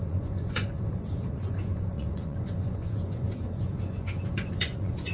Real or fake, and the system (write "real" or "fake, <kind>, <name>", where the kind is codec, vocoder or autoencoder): fake, vocoder, Vocos